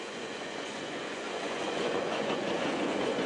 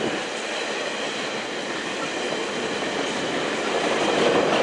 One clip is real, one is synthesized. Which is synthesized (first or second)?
first